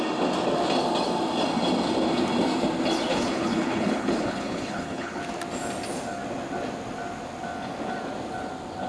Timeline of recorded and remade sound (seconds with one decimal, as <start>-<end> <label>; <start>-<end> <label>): 0.0-3.1 recorded; 3.1-5.2 remade; 5.2-8.9 recorded